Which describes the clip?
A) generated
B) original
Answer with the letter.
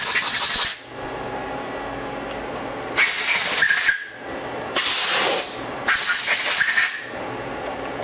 B